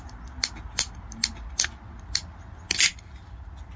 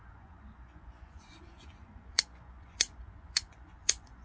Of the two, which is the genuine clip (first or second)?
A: first